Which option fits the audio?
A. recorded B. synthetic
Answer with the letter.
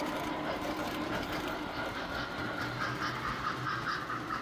A